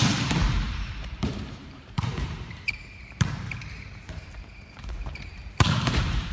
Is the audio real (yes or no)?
no